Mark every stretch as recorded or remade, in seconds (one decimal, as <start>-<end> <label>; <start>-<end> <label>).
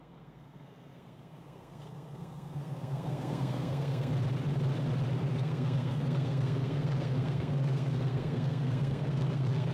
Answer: 0.0-4.1 remade; 4.1-5.3 recorded; 5.3-9.7 remade